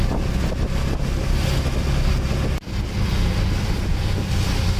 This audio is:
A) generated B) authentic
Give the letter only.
B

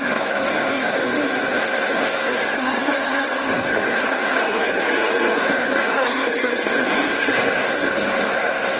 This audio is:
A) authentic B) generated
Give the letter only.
B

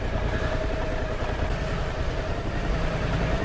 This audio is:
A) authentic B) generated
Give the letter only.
A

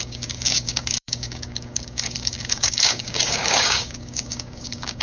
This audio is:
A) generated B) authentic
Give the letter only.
A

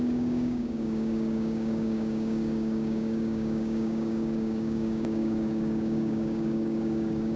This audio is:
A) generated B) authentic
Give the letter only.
A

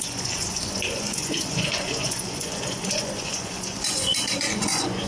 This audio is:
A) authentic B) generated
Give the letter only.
B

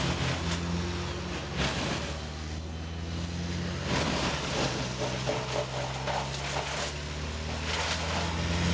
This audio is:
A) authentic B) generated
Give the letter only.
A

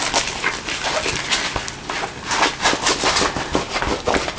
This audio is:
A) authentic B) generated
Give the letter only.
A